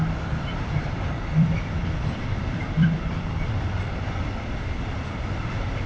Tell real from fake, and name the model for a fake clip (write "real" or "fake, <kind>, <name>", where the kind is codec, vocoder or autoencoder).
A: fake, vocoder, BigVGAN v2